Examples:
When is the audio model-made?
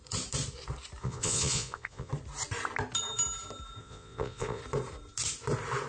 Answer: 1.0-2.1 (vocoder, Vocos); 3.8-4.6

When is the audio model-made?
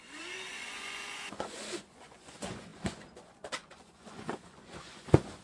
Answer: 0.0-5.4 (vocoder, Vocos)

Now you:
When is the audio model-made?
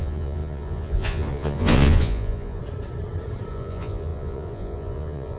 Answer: 0.0-2.6 (vocoder, Vocos); 3.5-5.4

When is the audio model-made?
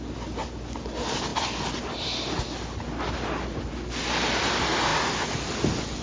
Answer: none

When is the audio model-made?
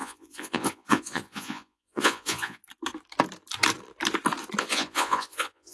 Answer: 0.0-2.6 (vocoder, Vocos); 4.6-5.7